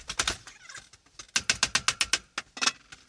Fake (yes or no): no